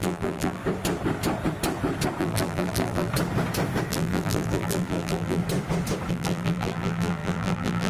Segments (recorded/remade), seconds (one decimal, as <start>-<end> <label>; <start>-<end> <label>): 0.0-0.6 remade; 0.6-2.2 recorded; 2.2-3.1 remade; 3.1-3.9 recorded; 3.9-5.4 remade; 5.4-6.1 recorded; 6.1-7.9 remade